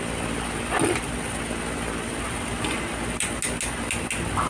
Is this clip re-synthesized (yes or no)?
no